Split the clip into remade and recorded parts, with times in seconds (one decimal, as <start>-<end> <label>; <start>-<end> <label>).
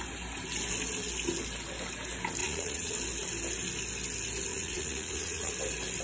0.0-2.4 recorded; 2.4-2.9 remade; 2.9-4.5 recorded; 4.5-5.5 remade; 5.5-6.0 recorded